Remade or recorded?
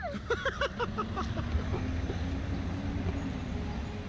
recorded